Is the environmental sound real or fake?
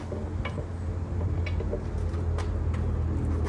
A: real